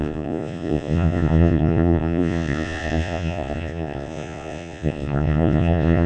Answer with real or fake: fake